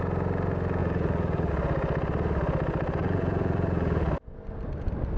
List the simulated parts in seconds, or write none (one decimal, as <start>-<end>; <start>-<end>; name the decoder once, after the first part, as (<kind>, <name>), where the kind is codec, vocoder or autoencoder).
0.8-1.5 (vocoder, BigVGAN v2); 3.0-4.1